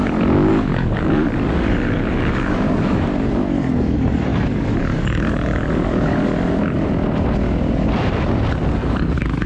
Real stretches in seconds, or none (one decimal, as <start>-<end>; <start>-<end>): 6.6-8.7